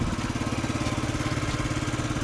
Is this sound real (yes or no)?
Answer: yes